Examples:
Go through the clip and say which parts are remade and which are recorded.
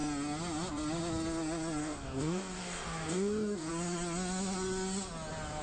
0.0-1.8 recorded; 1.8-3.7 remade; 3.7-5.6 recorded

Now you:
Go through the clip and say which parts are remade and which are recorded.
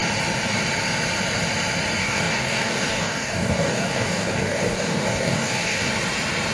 0.0-2.0 recorded; 2.0-5.9 remade; 5.9-6.5 recorded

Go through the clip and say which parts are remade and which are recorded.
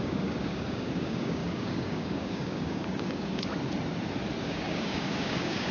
0.0-3.5 remade; 3.5-4.4 recorded; 4.4-5.7 remade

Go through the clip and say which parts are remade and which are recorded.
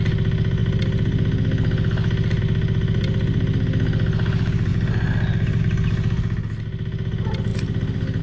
0.0-8.2 recorded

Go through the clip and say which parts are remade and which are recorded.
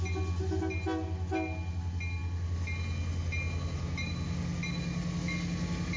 0.0-6.0 recorded